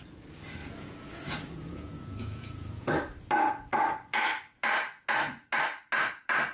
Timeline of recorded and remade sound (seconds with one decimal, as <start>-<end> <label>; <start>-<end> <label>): 0.0-0.6 recorded; 0.6-2.9 remade; 2.9-6.5 recorded